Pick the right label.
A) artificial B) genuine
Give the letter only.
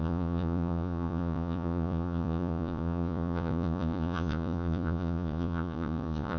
A